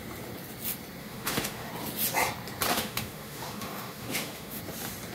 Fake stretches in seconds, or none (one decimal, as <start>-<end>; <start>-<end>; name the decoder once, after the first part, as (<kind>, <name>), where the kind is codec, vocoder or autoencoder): 1.0-1.7 (autoencoder, DAC-VAE); 2.7-4.6